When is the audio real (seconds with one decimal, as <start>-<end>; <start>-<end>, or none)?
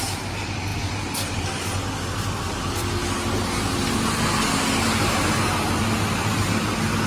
0.0-7.1